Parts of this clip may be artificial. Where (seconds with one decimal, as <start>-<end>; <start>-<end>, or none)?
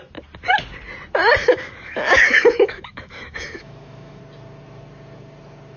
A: 1.4-4.2